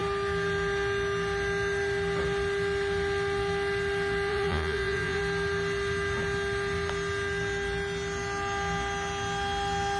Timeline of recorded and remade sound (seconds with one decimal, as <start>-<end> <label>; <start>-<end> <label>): 0.0-4.3 recorded; 4.3-5.2 remade; 5.2-10.0 recorded